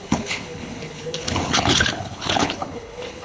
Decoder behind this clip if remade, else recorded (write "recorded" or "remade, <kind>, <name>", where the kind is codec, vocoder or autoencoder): remade, codec, HILCodec